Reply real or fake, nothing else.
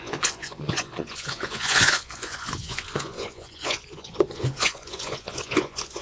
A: fake